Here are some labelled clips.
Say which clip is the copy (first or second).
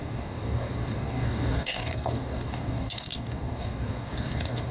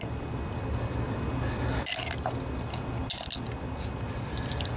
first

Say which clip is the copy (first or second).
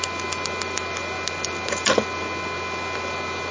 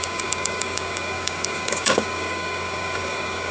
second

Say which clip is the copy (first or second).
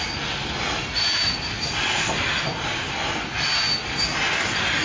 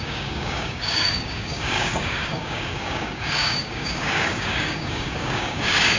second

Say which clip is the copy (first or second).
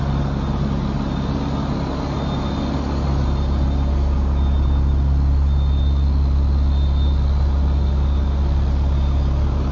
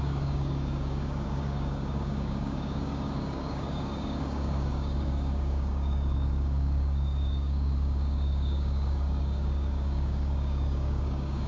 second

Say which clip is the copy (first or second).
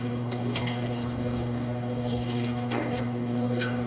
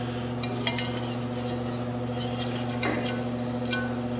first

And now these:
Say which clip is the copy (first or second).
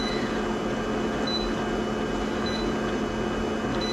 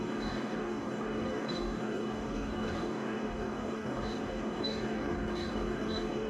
second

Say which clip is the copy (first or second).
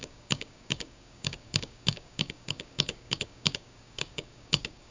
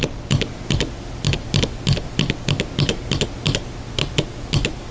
first